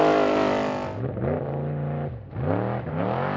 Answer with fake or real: real